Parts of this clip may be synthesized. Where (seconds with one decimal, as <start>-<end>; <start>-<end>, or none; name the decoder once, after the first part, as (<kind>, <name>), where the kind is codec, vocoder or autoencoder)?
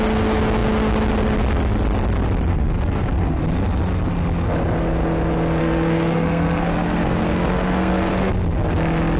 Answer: 2.5-3.4 (codec, SNAC); 5.6-8.3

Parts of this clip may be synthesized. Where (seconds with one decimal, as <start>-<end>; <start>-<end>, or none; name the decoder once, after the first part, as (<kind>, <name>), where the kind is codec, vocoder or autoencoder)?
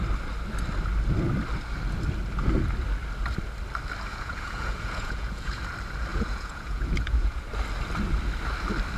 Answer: 4.1-5.6 (vocoder, Vocos); 6.1-7.4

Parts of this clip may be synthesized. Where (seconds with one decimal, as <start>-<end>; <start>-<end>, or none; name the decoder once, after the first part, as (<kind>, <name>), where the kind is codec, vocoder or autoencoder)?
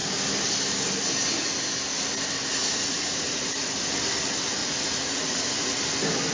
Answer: 2.6-3.7 (vocoder, Vocos); 4.6-5.8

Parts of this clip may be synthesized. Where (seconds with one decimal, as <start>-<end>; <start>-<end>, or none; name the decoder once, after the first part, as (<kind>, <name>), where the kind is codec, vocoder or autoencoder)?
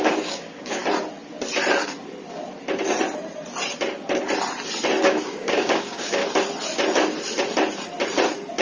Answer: 0.0-0.8 (codec, DAC); 5.0-6.2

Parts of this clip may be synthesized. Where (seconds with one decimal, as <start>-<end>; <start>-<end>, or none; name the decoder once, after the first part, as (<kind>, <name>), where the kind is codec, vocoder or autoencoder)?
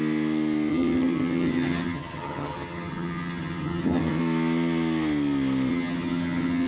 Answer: 0.7-4.2 (vocoder, HiFi-GAN); 5.7-6.7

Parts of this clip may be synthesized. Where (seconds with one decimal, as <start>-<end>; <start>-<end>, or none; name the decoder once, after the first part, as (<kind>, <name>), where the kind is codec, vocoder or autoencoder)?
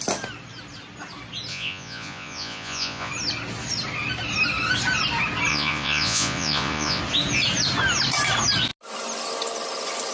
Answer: 1.5-3.1 (vocoder, Vocos); 5.5-7.0